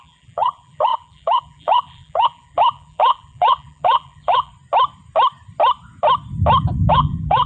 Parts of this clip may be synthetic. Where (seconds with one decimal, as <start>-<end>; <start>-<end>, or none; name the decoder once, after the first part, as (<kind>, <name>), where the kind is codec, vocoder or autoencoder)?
0.0-4.5 (vocoder, BigVGAN v2); 6.9-7.5